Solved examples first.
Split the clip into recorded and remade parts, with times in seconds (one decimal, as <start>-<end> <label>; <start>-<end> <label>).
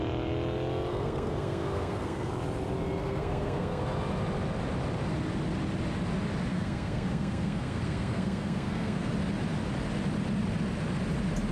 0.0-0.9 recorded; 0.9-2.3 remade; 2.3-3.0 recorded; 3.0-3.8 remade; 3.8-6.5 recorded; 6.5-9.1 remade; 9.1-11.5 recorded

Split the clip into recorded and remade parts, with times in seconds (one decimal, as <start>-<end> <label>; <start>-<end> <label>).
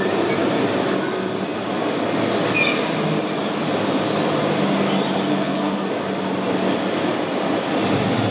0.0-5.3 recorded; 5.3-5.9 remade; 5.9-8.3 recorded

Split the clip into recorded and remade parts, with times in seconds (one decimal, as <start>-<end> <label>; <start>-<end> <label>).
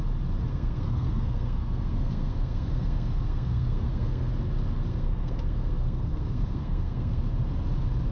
0.0-0.5 recorded; 0.5-4.3 remade; 4.3-4.9 recorded; 4.9-7.2 remade; 7.2-8.1 recorded